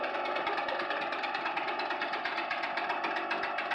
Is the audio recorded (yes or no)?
yes